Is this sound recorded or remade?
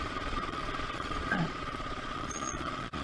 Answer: remade